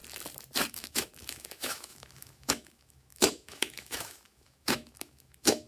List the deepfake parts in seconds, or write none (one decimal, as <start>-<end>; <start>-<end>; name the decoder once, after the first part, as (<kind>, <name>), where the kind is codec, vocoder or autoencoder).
0.7-5.7 (autoencoder, DAC-VAE)

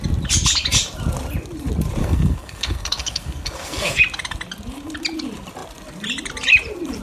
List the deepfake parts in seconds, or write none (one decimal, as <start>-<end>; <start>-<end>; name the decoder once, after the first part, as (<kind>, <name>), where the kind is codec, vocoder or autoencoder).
2.0-4.0 (codec, SNAC)